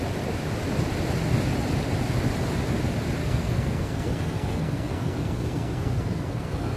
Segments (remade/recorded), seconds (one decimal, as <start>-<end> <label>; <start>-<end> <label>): 0.0-3.2 recorded; 3.2-6.8 remade